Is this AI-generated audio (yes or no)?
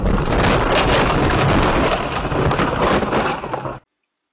no